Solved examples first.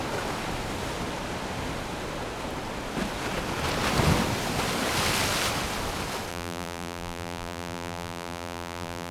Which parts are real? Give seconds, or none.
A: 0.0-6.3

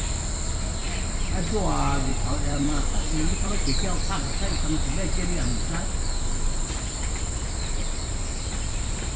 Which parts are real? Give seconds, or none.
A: 0.0-2.1; 4.5-9.2

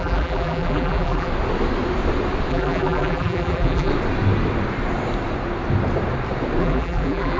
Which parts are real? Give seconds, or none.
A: 1.3-2.5; 3.9-6.6

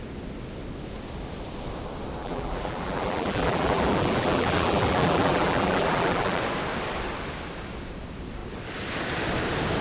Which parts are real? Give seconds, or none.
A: 0.0-2.2; 6.4-9.8

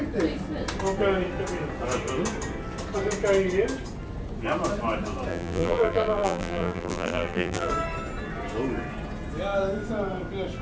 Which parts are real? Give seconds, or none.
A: 0.0-5.3; 7.7-10.6

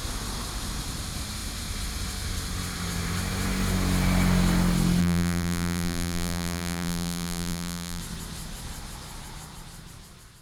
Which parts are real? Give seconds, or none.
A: 0.0-5.0; 8.0-10.4

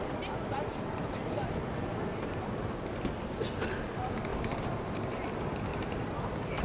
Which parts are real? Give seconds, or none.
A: 0.0-0.7; 2.9-4.3; 5.3-5.7